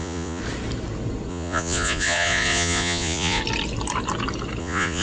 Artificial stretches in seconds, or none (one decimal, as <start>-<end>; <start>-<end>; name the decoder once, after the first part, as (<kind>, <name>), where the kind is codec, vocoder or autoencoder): 0.0-0.4 (vocoder, Vocos); 1.3-3.4; 4.6-5.0